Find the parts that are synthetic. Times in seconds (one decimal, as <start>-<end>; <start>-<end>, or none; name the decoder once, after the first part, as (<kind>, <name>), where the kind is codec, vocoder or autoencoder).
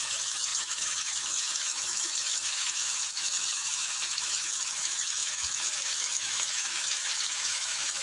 0.0-8.0 (autoencoder, DAC-VAE)